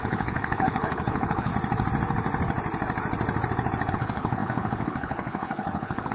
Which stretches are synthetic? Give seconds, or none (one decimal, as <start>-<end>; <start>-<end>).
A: 0.0-1.5; 3.9-6.1